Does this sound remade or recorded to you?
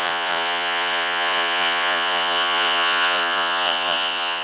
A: remade